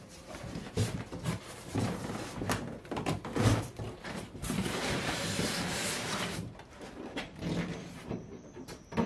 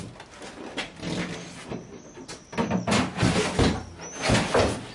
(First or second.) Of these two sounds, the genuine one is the second